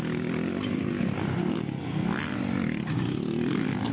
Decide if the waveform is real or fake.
real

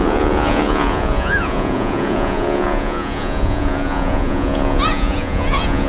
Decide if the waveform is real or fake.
fake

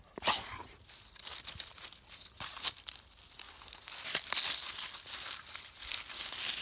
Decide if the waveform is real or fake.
real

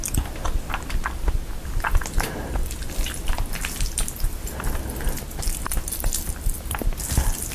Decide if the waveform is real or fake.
real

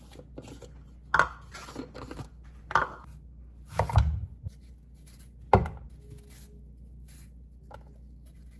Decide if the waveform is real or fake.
real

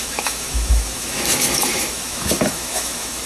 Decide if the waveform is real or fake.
fake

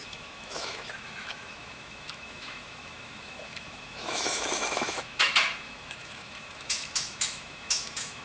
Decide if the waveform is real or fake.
fake